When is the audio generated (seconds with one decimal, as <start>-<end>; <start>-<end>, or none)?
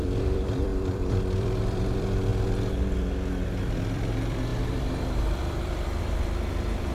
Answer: 0.0-2.3; 3.6-6.9